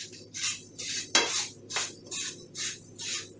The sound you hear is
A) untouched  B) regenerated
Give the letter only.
A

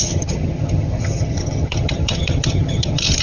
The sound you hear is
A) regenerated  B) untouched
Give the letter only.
A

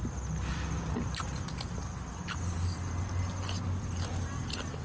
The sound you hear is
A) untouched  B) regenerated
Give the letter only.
A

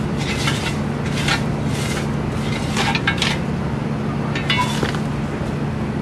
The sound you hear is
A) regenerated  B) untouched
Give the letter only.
B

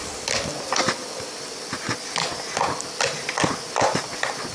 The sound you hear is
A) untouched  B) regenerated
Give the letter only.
A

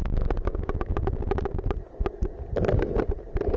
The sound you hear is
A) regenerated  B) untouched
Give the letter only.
B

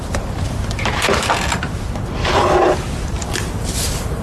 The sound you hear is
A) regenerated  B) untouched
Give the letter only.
A